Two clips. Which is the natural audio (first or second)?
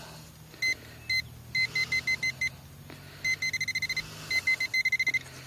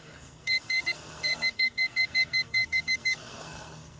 first